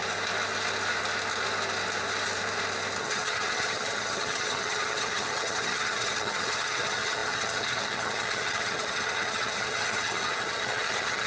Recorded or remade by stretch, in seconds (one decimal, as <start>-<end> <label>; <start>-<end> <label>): 0.0-3.0 recorded; 3.0-11.3 remade